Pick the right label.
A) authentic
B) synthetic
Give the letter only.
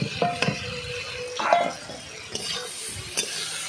A